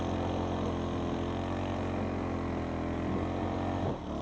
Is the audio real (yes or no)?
yes